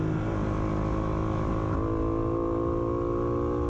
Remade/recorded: recorded